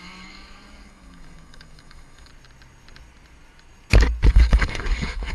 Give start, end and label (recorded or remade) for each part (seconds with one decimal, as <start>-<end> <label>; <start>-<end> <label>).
0.0-2.3 remade; 2.3-4.3 recorded; 4.3-5.3 remade